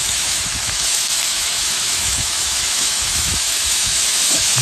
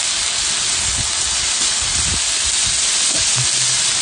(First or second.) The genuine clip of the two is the second